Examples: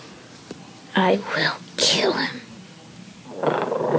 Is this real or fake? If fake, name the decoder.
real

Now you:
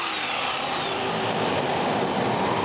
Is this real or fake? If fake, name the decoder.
real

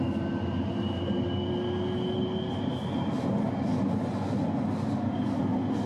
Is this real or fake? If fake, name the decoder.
fake, vocoder, BigVGAN v2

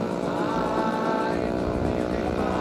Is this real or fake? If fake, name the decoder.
fake, vocoder, BigVGAN v2